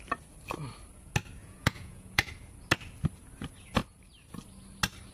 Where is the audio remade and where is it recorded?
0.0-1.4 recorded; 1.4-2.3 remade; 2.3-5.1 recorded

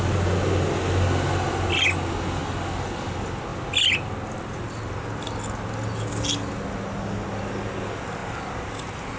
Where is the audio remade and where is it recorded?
0.0-9.2 recorded

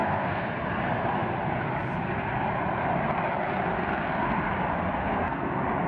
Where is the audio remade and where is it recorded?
0.0-0.5 remade; 0.5-5.0 recorded; 5.0-5.5 remade; 5.5-5.9 recorded

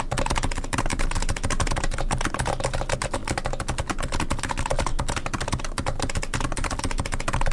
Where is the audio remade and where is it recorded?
0.0-7.5 recorded

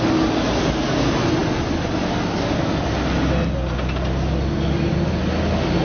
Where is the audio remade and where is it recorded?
0.0-5.8 recorded

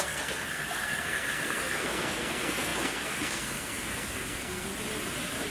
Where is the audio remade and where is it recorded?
0.0-4.7 remade; 4.7-5.5 recorded

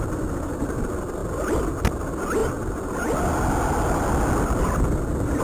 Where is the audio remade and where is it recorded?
0.0-5.4 recorded

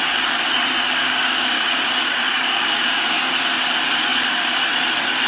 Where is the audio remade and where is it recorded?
0.0-1.0 recorded; 1.0-1.6 remade; 1.6-2.3 recorded; 2.3-3.3 remade; 3.3-4.1 recorded; 4.1-4.6 remade; 4.6-5.3 recorded